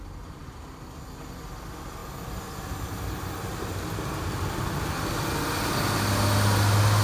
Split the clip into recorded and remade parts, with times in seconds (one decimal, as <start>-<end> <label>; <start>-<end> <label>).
0.0-7.0 recorded